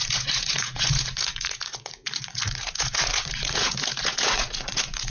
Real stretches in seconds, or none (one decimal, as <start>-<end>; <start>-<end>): none